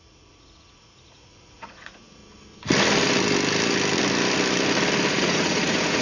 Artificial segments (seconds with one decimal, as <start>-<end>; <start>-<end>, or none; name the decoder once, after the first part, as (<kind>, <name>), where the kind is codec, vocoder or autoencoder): 0.0-2.2 (vocoder, Vocos); 5.1-6.0